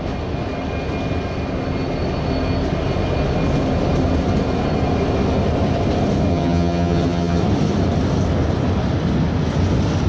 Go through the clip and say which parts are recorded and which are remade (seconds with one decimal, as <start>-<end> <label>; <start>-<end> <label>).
0.0-6.3 recorded; 6.3-7.4 remade; 7.4-10.1 recorded